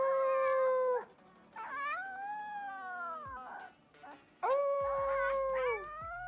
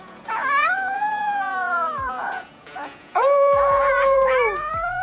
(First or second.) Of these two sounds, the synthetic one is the second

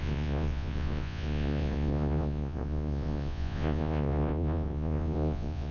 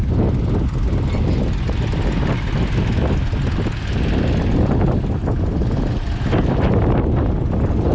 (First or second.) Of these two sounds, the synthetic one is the first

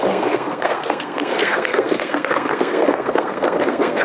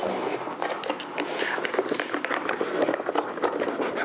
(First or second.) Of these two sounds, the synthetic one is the first